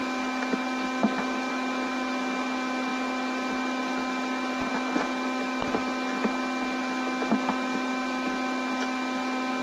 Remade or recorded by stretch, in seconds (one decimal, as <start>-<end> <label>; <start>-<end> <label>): 0.0-9.6 recorded